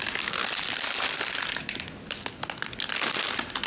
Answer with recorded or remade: recorded